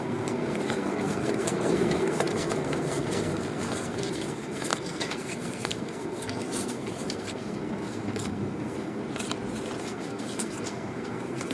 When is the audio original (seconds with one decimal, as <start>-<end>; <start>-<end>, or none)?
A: 9.0-9.8